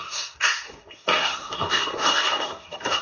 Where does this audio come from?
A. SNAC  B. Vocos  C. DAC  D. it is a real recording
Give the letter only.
A